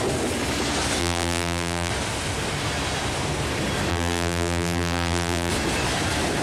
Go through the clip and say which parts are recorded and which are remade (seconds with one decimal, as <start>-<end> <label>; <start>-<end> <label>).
0.0-1.0 recorded; 1.0-1.9 remade; 1.9-3.9 recorded; 3.9-5.5 remade; 5.5-6.4 recorded